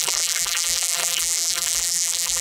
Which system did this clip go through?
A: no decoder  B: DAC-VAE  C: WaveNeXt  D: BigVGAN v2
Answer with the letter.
D